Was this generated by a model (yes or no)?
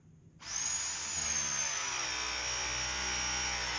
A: no